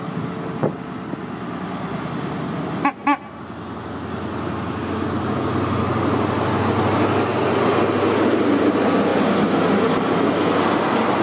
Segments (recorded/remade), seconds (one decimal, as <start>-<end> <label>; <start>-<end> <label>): 0.0-11.2 recorded